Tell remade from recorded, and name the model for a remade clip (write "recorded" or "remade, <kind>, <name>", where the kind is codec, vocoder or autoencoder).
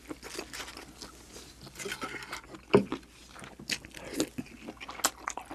recorded